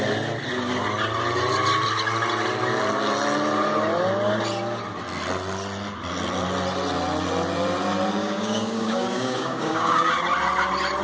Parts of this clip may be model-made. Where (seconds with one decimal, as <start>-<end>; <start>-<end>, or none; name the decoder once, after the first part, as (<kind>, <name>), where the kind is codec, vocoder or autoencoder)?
8.2-10.1 (codec, DAC)